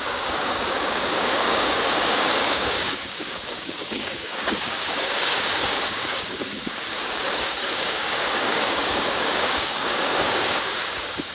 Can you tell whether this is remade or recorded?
remade